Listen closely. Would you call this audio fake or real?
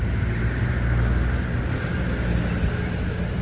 real